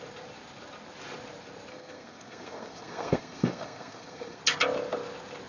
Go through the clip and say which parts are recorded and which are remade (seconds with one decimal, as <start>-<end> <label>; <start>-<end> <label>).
0.0-1.7 recorded; 1.7-4.4 remade; 4.4-5.5 recorded